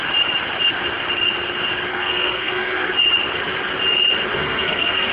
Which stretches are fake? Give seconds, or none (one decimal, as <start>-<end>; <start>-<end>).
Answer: 1.9-2.9; 4.3-5.1